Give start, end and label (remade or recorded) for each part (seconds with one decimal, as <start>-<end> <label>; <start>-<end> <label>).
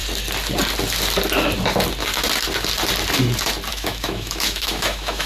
0.0-3.7 recorded; 3.7-5.3 remade